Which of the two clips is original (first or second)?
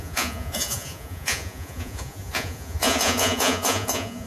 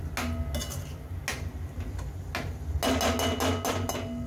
second